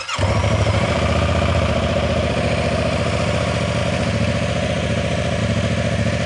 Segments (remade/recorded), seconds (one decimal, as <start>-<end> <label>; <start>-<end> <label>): 0.0-0.4 recorded; 0.4-3.4 remade; 3.4-3.8 recorded; 3.8-5.4 remade; 5.4-6.3 recorded